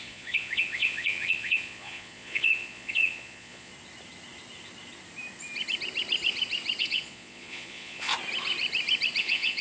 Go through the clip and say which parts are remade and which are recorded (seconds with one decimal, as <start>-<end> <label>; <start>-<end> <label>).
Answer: 0.0-3.7 remade; 3.7-6.8 recorded; 6.8-8.1 remade; 8.1-9.2 recorded; 9.2-9.6 remade